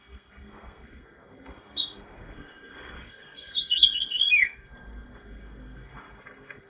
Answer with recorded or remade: remade